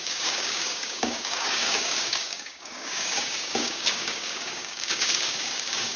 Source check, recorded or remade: remade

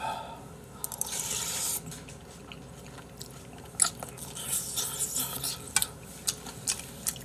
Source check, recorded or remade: recorded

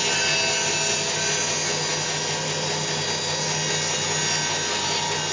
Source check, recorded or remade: recorded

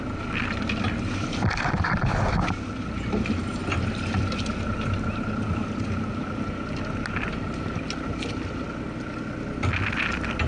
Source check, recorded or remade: recorded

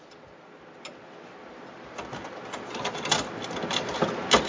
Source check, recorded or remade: recorded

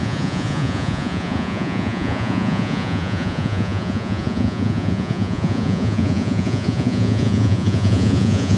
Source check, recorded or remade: remade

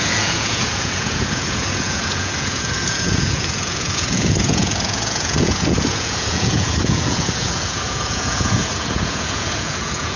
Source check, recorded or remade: remade